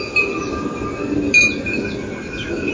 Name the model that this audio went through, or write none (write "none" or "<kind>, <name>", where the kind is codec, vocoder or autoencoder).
none